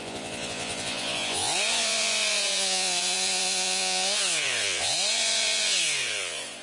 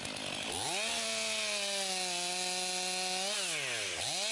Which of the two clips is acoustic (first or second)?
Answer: second